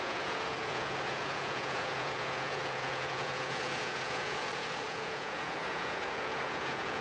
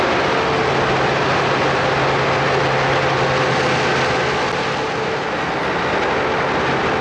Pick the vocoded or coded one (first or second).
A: first